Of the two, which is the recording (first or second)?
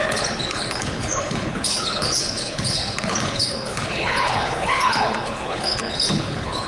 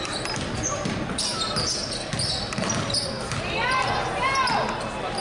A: second